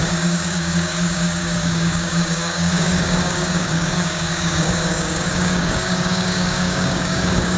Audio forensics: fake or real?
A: fake